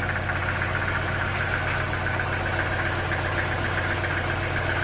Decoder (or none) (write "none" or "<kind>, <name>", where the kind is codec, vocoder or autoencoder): none